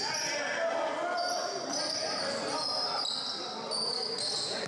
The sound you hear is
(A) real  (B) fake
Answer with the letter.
A